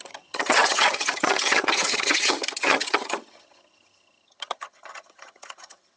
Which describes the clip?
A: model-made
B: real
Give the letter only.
A